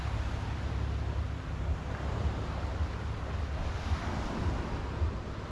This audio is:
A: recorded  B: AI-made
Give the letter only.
A